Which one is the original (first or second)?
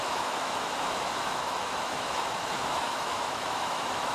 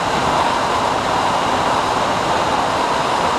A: second